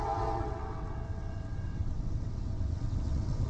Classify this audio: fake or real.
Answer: fake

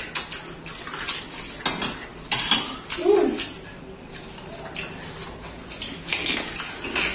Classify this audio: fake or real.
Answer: real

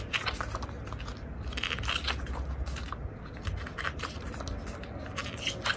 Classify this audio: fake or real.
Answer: real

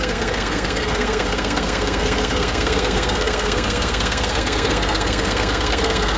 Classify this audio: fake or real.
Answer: fake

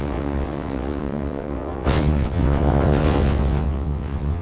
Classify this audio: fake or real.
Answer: fake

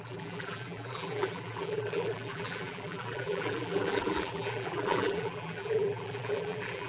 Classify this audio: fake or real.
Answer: fake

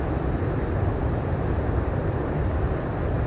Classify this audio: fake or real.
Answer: real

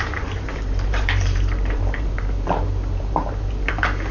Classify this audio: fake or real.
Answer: fake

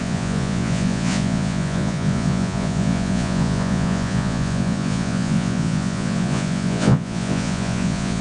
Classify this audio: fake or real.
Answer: fake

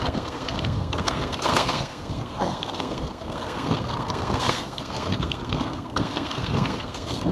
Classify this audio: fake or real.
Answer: fake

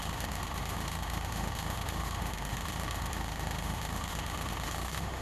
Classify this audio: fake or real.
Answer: fake